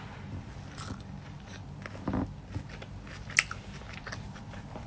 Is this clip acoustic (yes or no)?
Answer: yes